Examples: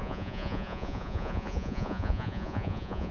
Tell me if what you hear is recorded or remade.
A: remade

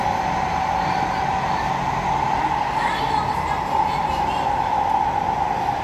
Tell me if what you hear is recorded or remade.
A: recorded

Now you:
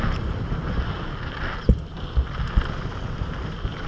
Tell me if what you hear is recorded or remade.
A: recorded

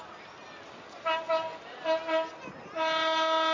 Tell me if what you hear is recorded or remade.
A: recorded